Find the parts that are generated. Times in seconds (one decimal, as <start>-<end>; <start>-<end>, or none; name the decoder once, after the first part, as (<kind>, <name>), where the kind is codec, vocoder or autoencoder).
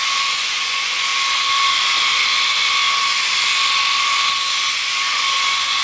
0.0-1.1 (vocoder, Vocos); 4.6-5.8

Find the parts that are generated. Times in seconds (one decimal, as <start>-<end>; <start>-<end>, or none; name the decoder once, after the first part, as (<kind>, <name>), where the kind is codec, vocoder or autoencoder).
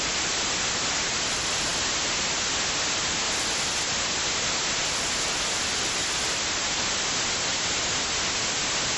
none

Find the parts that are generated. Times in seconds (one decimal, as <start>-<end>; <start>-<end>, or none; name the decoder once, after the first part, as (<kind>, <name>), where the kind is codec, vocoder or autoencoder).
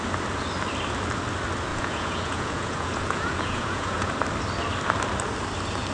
1.7-4.1 (vocoder, Vocos)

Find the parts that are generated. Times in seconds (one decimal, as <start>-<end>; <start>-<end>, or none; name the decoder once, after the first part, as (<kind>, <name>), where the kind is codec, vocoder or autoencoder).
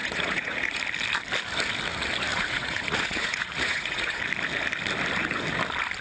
0.0-0.8 (vocoder, Vocos); 2.3-4.2